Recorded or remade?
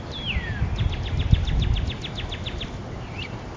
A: recorded